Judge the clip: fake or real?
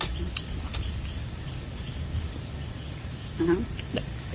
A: real